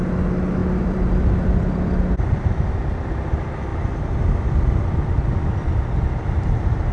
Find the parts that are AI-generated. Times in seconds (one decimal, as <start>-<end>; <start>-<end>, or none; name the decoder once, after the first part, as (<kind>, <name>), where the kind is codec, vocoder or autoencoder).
0.6-2.2 (vocoder, BigVGAN v2)